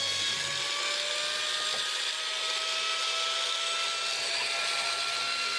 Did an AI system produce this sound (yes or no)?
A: no